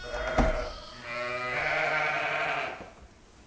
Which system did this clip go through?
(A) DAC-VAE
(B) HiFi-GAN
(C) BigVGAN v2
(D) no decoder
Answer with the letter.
D